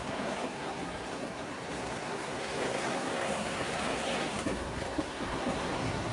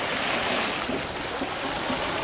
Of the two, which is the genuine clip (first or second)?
second